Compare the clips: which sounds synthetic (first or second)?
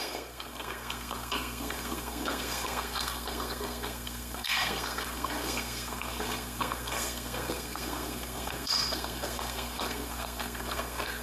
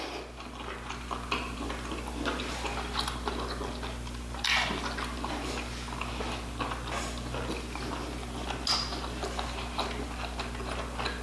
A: first